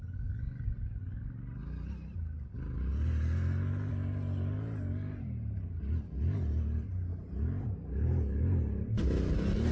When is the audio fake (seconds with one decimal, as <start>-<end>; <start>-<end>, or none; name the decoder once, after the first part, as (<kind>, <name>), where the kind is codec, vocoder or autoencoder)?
none